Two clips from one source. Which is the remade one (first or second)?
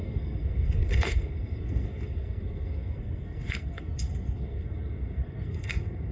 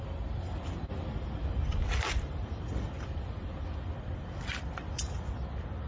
first